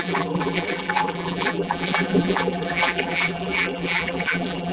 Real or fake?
fake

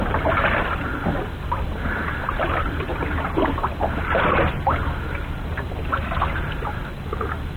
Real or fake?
real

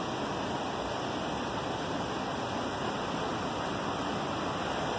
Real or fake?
real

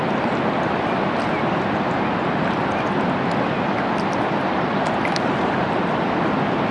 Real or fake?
real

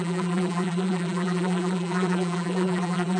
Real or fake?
fake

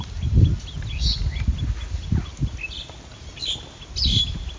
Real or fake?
real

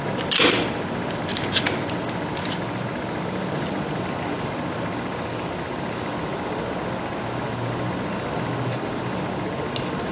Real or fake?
real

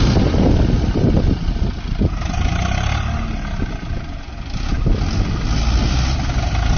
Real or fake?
real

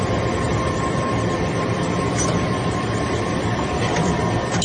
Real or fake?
fake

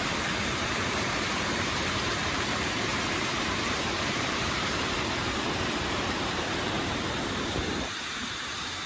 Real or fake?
fake